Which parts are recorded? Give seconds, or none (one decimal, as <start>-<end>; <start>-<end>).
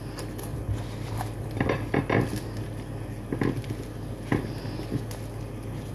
0.0-5.9